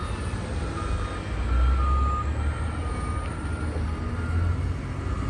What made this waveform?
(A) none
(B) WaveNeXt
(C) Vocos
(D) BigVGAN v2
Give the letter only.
A